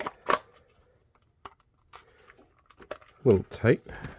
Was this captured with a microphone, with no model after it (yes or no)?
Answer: yes